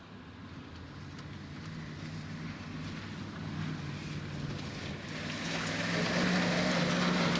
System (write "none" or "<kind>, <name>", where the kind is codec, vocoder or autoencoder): none